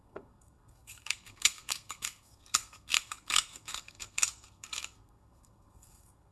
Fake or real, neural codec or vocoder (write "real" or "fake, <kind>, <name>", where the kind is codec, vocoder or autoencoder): fake, codec, SNAC